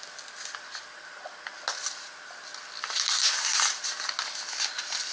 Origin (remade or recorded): recorded